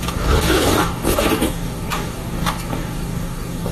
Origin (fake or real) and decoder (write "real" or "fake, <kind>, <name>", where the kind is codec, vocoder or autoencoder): fake, codec, DAC